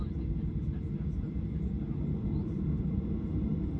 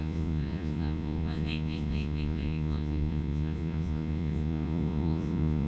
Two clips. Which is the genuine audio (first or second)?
first